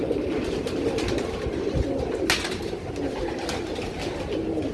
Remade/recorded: recorded